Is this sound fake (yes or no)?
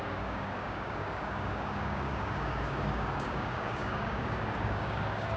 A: yes